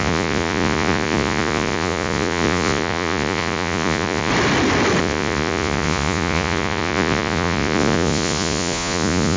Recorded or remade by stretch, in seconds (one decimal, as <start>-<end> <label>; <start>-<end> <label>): 0.0-4.3 remade; 4.3-5.0 recorded; 5.0-9.4 remade